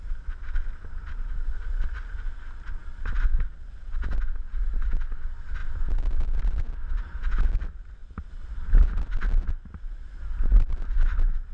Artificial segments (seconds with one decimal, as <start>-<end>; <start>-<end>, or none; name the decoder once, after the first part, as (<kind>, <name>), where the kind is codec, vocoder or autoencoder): none